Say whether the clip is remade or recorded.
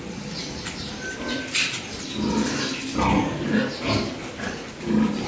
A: recorded